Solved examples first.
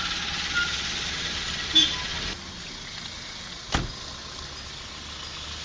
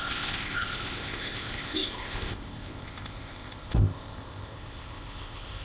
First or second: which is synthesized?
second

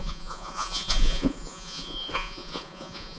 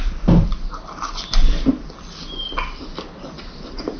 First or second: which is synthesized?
first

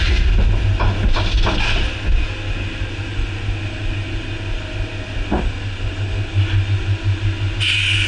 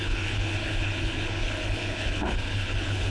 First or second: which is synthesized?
second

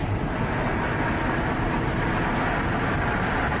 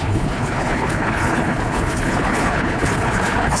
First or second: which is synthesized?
second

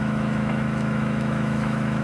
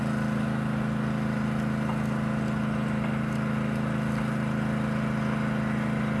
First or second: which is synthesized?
first